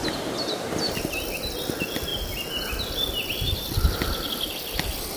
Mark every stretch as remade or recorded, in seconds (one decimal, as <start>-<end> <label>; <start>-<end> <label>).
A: 0.0-5.2 recorded